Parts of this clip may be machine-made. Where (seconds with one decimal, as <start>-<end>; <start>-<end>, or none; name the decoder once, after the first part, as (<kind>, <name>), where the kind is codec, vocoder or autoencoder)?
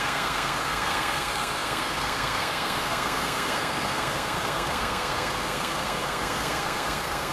0.0-7.3 (codec, SNAC)